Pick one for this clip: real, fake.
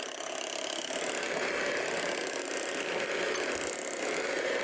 real